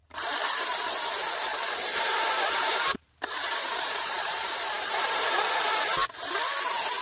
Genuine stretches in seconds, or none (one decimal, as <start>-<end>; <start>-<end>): 1.0-1.5; 5.3-7.0